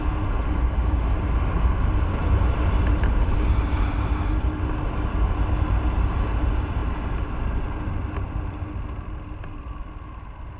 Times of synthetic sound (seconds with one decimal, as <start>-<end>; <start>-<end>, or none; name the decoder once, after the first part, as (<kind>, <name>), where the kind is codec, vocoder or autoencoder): none